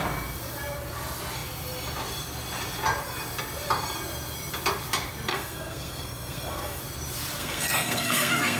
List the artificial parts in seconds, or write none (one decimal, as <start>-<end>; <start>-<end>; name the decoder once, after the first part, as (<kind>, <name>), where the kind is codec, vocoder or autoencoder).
5.3-6.8 (codec, SNAC); 7.4-8.6